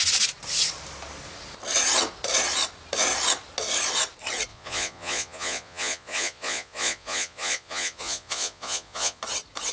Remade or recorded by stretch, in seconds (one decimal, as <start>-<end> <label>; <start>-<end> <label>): 0.0-4.5 recorded; 4.5-9.2 remade; 9.2-9.7 recorded